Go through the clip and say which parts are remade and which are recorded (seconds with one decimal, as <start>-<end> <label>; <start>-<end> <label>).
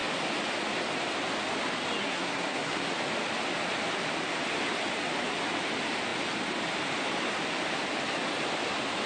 0.0-2.0 recorded; 2.0-2.9 remade; 2.9-9.1 recorded